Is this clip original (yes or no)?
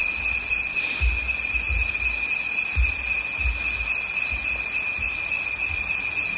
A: yes